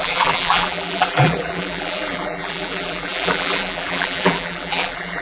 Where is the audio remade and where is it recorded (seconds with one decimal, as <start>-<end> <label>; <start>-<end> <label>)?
0.0-5.2 remade